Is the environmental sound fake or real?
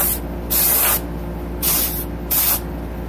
real